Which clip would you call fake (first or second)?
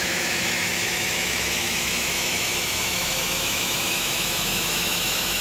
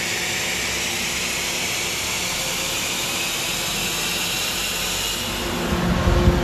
first